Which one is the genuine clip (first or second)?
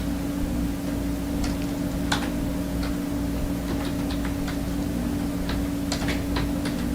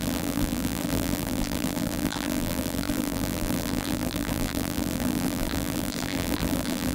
first